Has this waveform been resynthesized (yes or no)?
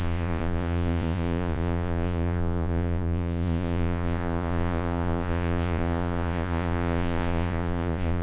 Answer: yes